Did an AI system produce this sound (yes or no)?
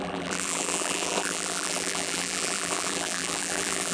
yes